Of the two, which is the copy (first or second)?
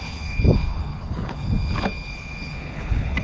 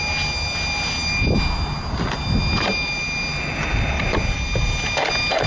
first